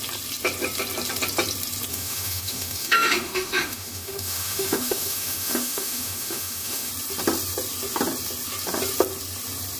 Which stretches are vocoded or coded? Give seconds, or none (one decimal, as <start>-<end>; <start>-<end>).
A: 1.9-6.9